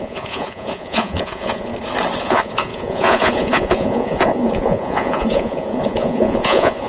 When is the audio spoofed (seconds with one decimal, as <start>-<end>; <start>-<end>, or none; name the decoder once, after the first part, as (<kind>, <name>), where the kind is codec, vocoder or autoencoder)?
0.0-1.7 (vocoder, Vocos); 2.2-6.9